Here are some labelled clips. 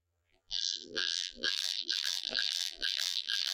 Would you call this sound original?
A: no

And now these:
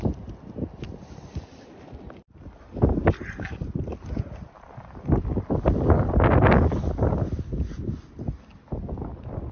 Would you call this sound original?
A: yes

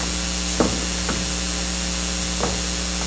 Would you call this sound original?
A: yes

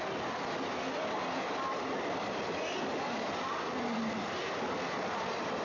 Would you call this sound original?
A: yes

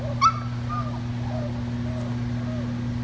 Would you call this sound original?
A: yes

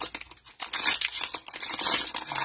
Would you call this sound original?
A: yes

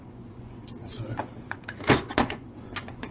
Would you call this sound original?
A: no